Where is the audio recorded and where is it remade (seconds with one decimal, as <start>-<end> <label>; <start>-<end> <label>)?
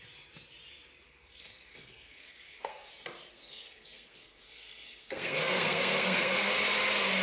0.0-1.1 recorded; 1.1-2.9 remade; 2.9-3.3 recorded; 3.3-6.5 remade; 6.5-7.2 recorded